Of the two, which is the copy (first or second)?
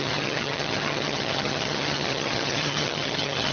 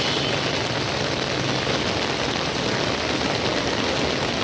first